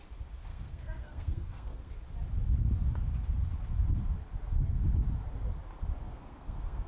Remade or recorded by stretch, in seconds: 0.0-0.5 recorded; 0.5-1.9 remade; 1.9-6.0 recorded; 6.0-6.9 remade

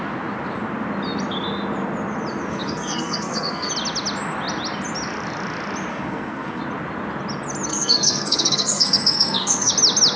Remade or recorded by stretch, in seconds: 0.0-2.5 recorded; 2.5-3.7 remade; 3.7-5.9 recorded; 5.9-6.6 remade; 6.6-7.7 recorded; 7.7-9.7 remade; 9.7-10.2 recorded

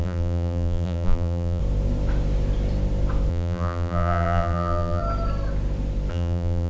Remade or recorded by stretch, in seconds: 0.0-1.6 remade; 1.6-3.3 recorded; 3.3-5.0 remade; 5.0-6.1 recorded; 6.1-6.7 remade

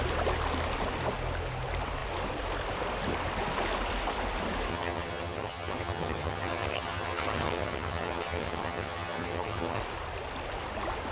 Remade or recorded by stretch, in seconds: 0.0-4.7 recorded; 4.7-9.8 remade; 9.8-11.1 recorded

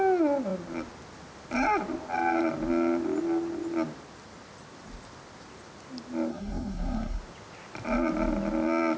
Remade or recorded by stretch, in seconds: 0.0-6.3 recorded; 6.3-7.2 remade; 7.2-9.0 recorded

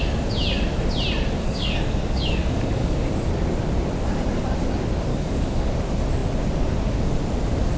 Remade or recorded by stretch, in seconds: 0.0-1.4 recorded; 1.4-3.1 remade; 3.1-5.1 recorded; 5.1-5.7 remade; 5.7-7.8 recorded

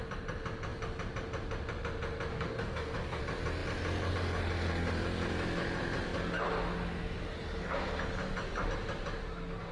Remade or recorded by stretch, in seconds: 0.0-2.3 recorded; 2.3-3.2 remade; 3.2-9.7 recorded